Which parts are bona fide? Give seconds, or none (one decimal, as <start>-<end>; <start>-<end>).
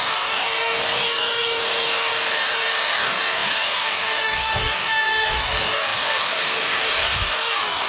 none